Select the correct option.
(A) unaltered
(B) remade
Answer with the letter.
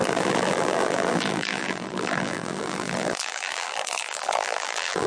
B